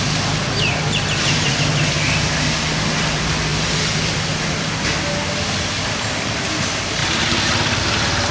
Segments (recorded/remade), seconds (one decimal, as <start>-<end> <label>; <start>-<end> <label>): 0.0-8.3 recorded